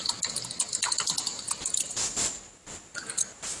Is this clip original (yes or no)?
yes